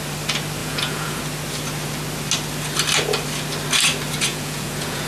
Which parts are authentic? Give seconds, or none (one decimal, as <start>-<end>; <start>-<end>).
0.0-0.6; 1.2-4.3